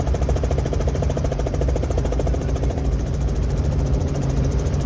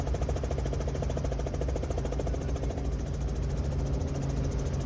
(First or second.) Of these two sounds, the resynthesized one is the first